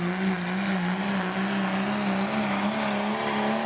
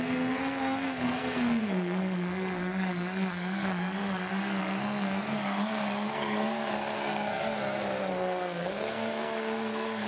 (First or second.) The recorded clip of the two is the first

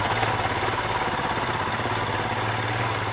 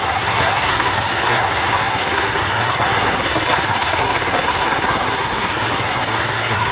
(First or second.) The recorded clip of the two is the first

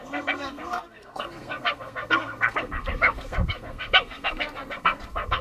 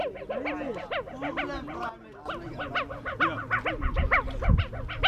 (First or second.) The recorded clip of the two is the second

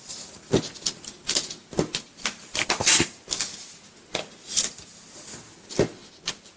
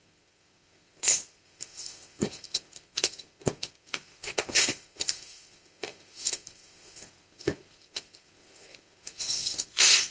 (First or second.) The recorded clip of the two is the first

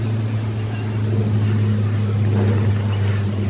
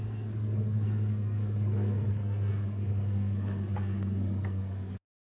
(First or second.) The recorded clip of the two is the first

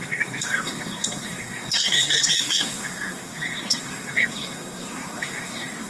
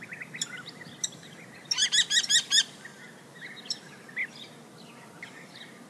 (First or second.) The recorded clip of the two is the second